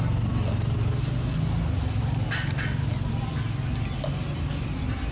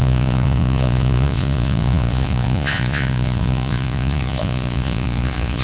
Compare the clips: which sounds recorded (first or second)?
first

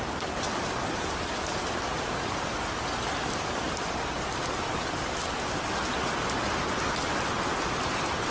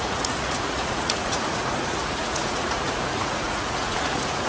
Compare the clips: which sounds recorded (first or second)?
first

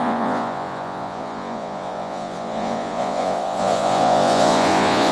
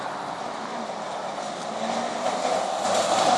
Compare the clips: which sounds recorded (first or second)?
second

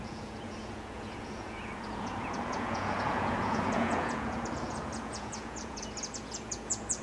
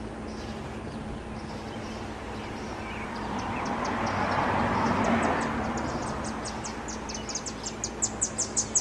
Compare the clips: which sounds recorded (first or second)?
second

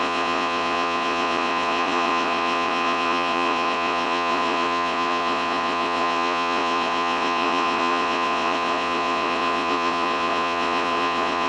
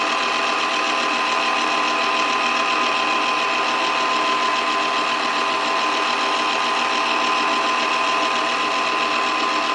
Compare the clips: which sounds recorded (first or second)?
second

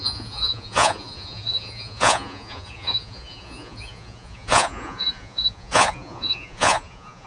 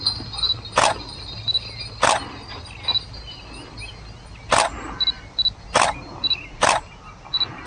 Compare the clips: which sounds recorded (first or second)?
second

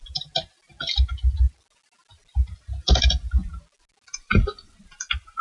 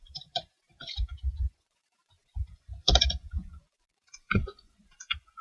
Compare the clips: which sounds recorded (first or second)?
first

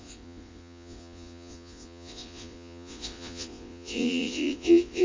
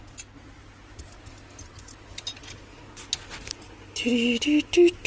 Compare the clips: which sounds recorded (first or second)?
second